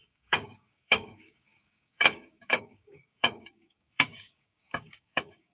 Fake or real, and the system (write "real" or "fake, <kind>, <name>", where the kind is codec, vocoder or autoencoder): fake, codec, DAC